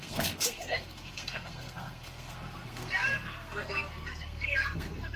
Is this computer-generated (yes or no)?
yes